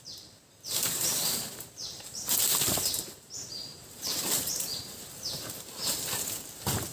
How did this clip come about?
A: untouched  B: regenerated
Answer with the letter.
B